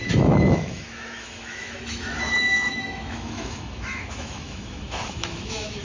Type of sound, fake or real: fake